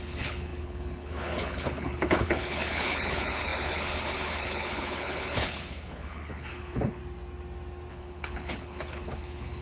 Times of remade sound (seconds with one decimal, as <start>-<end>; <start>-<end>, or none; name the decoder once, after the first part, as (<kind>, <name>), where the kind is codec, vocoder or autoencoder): 0.0-7.0 (codec, HILCodec); 7.9-9.6